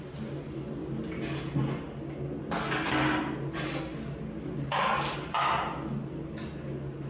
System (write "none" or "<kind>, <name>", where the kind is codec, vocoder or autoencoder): none